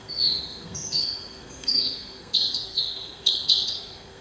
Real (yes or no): no